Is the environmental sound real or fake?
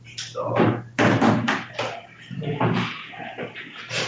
real